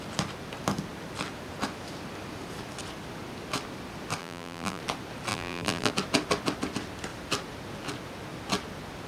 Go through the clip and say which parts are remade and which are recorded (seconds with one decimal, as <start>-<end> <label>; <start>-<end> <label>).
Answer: 0.0-4.2 recorded; 4.2-4.8 remade; 4.8-5.3 recorded; 5.3-5.9 remade; 5.9-9.1 recorded